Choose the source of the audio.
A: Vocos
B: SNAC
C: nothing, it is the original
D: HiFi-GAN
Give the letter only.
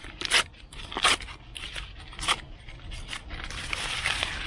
C